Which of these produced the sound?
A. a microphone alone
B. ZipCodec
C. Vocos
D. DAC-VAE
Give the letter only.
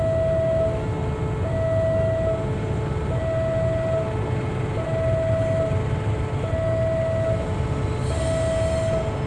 A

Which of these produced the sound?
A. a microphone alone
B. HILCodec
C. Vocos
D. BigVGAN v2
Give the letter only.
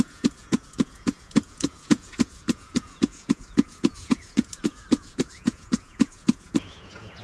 C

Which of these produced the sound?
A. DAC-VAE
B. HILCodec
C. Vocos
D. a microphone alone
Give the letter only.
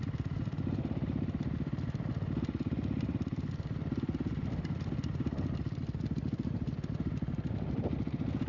D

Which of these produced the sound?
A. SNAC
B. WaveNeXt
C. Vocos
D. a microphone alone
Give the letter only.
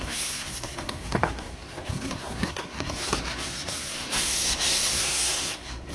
A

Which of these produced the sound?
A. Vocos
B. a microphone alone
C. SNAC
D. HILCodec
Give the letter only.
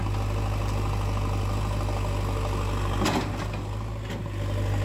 B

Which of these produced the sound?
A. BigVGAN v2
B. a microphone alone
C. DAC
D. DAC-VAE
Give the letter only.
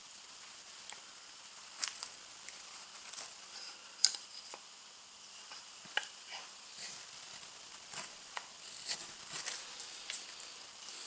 A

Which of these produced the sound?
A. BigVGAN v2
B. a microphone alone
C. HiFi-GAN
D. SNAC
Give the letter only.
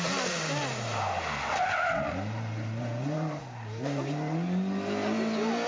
B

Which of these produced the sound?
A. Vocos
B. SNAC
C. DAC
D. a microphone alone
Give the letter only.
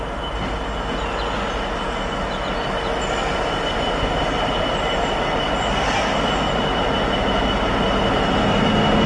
D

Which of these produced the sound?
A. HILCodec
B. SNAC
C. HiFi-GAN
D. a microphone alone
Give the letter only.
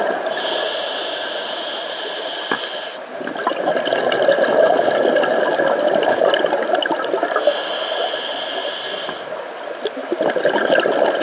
D